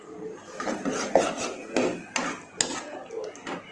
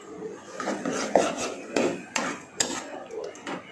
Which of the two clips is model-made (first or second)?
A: second